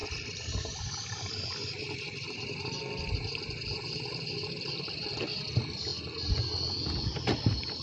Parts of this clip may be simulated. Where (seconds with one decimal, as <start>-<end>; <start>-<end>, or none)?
none